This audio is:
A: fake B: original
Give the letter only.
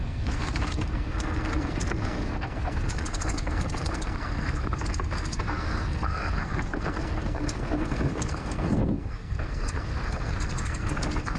A